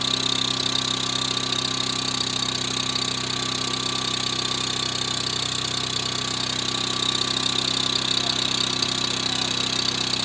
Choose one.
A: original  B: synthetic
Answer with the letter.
A